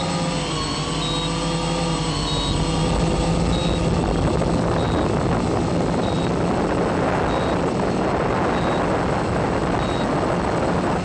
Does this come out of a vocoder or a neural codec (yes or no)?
no